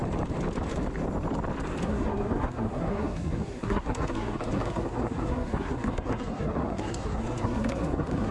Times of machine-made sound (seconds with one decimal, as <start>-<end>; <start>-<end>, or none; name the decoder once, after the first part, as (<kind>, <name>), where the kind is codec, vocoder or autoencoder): 1.8-8.3 (codec, SNAC)